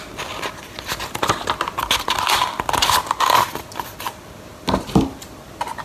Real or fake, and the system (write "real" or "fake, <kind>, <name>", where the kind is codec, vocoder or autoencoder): real